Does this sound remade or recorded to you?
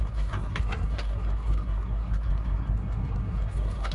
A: remade